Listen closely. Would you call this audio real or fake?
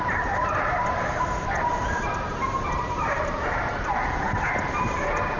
fake